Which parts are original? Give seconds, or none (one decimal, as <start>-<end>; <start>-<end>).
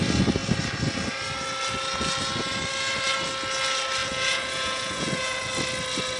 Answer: 0.0-4.0; 5.5-6.2